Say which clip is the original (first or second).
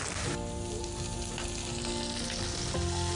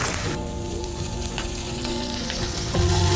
first